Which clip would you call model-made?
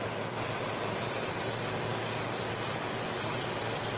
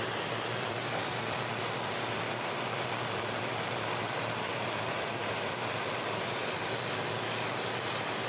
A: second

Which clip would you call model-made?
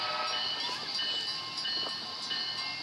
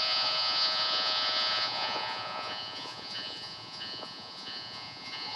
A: second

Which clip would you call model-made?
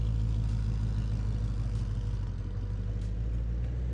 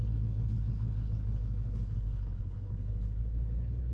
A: second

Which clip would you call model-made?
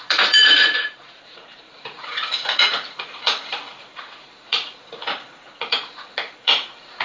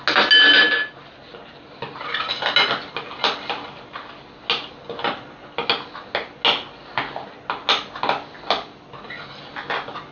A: first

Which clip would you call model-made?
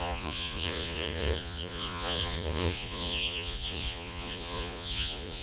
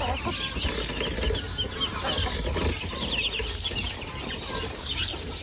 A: first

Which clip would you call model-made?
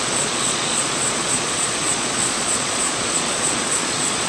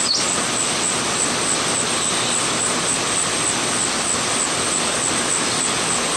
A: first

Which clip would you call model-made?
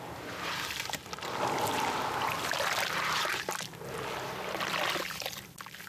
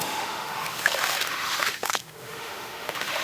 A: second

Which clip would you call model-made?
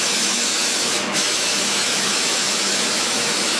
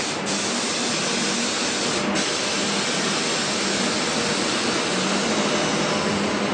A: first